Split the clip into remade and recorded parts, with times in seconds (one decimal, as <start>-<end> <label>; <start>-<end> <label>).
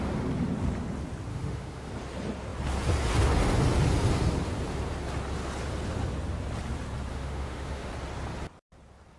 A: 0.0-1.3 recorded; 1.3-1.9 remade; 1.9-7.1 recorded; 7.1-7.9 remade; 7.9-9.2 recorded